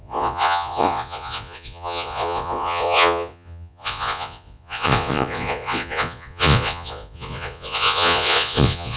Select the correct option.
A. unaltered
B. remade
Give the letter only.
B